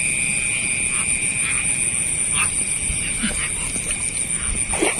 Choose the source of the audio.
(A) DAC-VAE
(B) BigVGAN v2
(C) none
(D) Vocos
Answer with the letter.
C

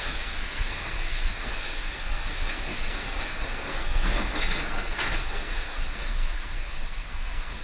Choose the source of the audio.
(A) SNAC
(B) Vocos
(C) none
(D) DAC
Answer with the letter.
A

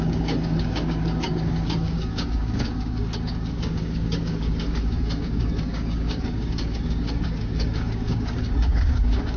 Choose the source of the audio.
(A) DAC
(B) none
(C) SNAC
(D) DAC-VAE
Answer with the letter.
A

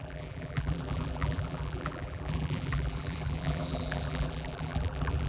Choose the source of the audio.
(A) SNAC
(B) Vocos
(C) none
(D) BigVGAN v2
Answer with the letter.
D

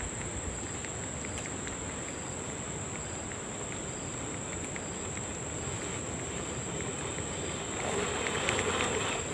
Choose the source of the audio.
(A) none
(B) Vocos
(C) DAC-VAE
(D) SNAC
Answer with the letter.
A